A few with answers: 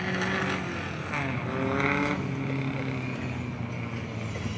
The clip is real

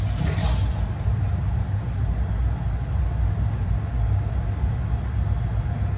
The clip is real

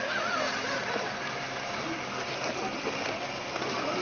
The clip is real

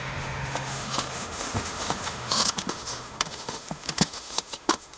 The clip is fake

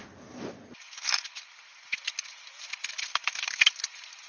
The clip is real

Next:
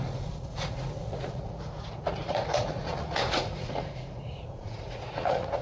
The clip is fake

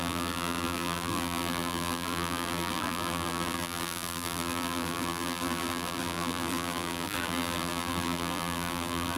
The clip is fake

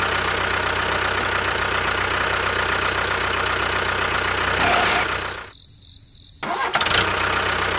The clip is real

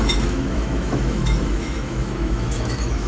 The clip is fake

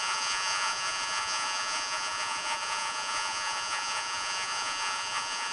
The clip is fake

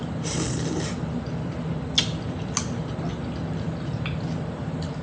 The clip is real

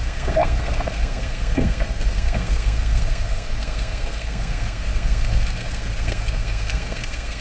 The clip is fake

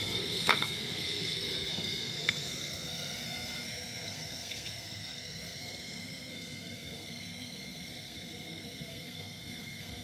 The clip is fake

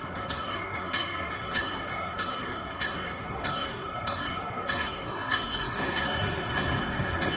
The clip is fake